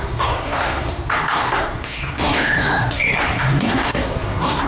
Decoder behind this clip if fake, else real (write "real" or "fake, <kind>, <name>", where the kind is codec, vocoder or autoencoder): fake, codec, SNAC